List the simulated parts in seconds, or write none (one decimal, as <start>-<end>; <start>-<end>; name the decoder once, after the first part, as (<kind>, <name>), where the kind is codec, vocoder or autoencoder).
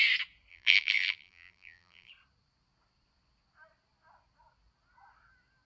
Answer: 0.5-2.1 (vocoder, BigVGAN v2)